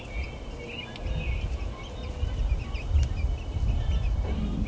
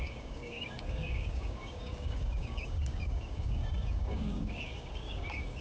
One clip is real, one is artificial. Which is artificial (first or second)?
second